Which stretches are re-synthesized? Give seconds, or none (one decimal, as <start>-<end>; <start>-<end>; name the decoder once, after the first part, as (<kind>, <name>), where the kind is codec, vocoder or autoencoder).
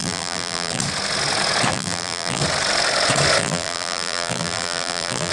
0.0-0.8 (vocoder, BigVGAN v2); 1.7-2.4; 3.4-5.3